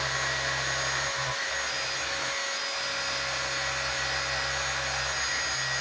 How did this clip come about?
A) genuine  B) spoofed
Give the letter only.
A